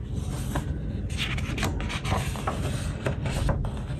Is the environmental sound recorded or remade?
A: recorded